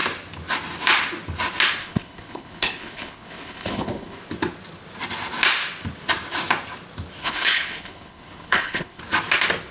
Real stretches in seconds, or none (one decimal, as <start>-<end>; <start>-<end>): 0.0-1.8; 4.2-7.2; 9.0-9.7